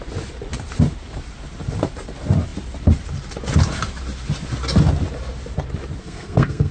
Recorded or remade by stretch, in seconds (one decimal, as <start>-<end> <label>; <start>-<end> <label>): 0.0-6.0 recorded; 6.0-6.7 remade